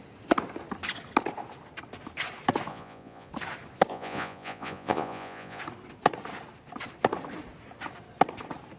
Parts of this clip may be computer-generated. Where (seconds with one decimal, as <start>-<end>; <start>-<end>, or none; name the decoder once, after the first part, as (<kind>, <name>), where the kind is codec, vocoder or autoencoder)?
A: 2.7-3.3 (vocoder, Vocos); 3.9-5.6